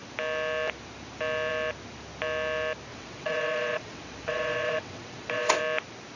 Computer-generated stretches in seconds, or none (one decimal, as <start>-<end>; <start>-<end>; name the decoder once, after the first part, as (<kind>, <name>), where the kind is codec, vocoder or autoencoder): 2.9-5.6 (vocoder, WaveNeXt)